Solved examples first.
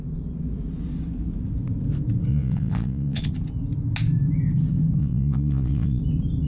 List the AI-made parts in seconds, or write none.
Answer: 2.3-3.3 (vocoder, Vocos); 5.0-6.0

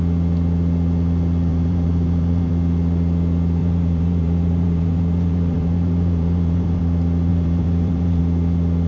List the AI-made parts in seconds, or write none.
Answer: 1.5-2.5 (vocoder, BigVGAN v2); 3.6-6.8; 7.3-8.2